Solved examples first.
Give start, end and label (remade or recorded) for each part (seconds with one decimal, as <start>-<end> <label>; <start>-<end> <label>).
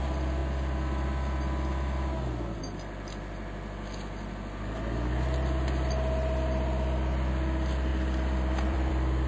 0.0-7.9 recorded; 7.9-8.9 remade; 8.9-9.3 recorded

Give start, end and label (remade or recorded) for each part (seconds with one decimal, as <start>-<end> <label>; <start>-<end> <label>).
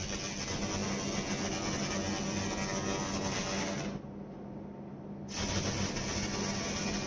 0.0-7.1 recorded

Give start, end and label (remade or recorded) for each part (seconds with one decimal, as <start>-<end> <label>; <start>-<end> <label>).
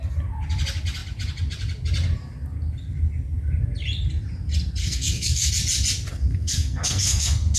0.0-4.8 recorded; 4.8-5.5 remade; 5.5-6.1 recorded; 6.1-7.6 remade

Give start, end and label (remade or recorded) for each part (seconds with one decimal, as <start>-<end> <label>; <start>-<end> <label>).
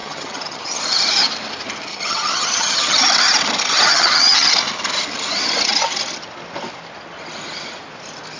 0.0-0.8 remade; 0.8-1.9 recorded; 1.9-3.1 remade; 3.1-3.9 recorded; 3.9-4.5 remade; 4.5-8.4 recorded